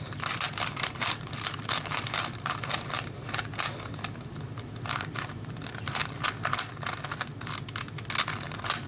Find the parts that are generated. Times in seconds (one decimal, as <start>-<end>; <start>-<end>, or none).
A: 0.0-6.0; 8.2-8.9